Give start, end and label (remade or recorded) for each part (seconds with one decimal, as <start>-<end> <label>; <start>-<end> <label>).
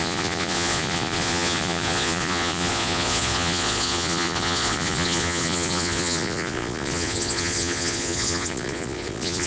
0.0-9.5 remade